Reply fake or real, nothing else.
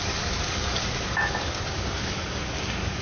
fake